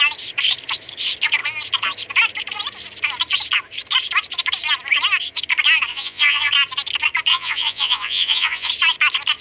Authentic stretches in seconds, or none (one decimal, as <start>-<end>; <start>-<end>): 0.0-5.9; 6.5-7.3; 8.7-9.4

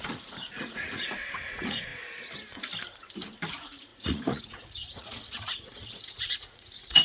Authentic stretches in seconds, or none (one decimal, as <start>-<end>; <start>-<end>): 1.9-3.5

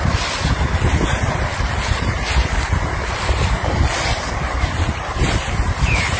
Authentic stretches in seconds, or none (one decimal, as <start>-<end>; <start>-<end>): 0.0-6.2

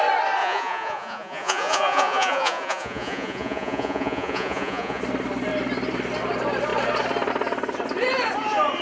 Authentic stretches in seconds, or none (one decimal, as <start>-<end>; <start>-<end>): 0.0-0.4; 5.0-8.8